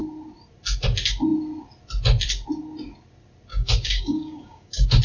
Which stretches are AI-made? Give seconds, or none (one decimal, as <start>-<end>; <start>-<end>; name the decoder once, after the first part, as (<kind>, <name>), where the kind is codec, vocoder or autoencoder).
3.5-5.0 (codec, DAC)

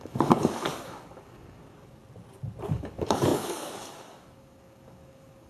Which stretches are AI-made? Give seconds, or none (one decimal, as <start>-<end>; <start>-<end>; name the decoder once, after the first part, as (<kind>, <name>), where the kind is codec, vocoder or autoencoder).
0.0-2.0 (codec, DAC); 2.7-5.5